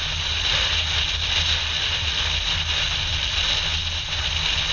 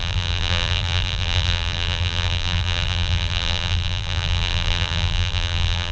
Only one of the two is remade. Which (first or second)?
second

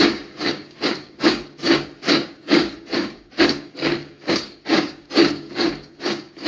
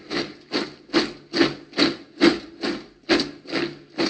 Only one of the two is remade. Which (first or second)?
first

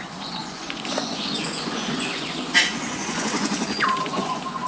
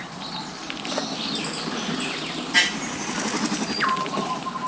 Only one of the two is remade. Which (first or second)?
first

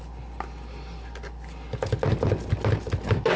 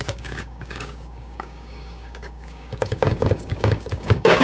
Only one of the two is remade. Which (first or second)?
second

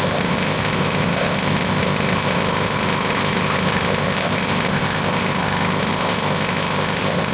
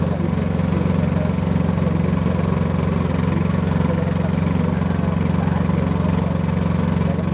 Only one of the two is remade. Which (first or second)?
first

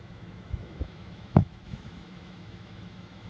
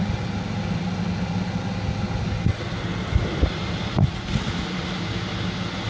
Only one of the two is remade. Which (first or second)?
first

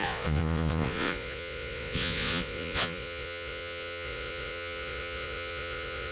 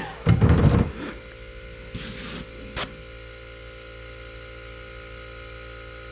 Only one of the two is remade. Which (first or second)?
first